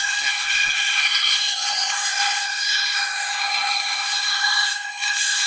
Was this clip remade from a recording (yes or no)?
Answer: yes